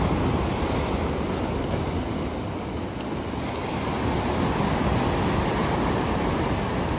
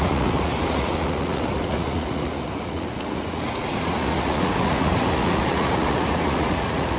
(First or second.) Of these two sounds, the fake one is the second